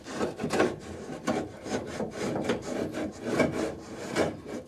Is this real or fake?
fake